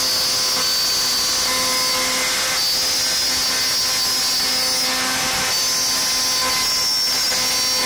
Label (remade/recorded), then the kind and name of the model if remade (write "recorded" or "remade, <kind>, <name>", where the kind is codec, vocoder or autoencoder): recorded